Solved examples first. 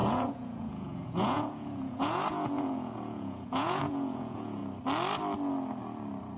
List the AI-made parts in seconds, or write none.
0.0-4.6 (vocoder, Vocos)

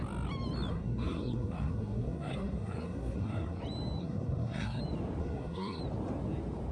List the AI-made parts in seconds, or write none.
0.7-3.6 (codec, SNAC); 4.0-4.8; 5.2-5.8

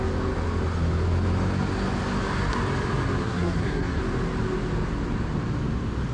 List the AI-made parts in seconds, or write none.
3.2-4.0 (codec, SNAC)

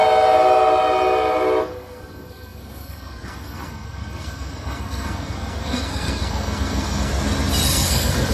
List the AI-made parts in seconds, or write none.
1.6-7.1 (codec, SNAC); 7.6-8.3

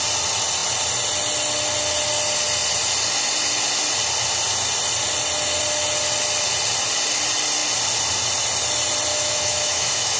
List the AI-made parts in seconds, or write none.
9.1-10.2 (autoencoder, DAC-VAE)

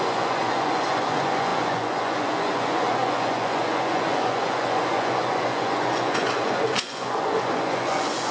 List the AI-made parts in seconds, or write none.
0.0-8.3 (vocoder, Vocos)